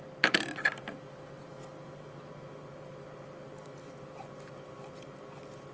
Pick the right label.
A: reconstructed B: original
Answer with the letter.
B